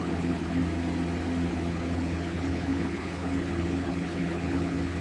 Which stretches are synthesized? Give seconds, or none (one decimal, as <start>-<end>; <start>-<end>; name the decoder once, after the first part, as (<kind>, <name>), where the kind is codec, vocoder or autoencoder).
0.0-0.6 (codec, HILCodec); 1.5-5.0